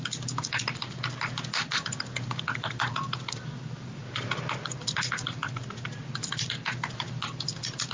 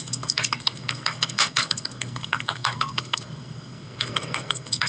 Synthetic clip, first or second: second